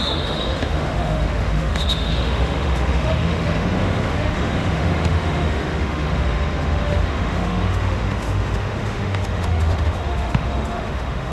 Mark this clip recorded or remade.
remade